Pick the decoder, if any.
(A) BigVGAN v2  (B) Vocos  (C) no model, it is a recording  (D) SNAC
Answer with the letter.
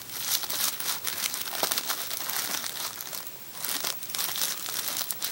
C